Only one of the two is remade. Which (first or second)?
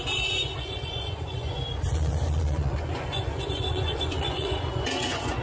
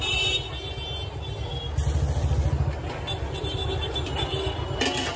first